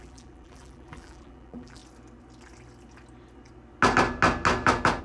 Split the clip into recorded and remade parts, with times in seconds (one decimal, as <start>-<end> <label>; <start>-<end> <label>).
0.0-1.8 remade; 1.8-5.0 recorded